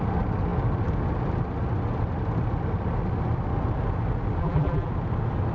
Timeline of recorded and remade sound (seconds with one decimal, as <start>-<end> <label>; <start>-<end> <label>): 0.0-4.4 recorded; 4.4-4.9 remade; 4.9-5.5 recorded